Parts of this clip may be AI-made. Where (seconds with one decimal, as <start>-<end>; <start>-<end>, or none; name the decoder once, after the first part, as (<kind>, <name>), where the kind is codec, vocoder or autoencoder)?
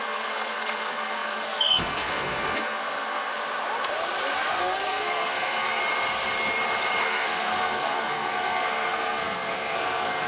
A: 0.0-3.3 (codec, SNAC); 4.6-5.8; 7.0-10.3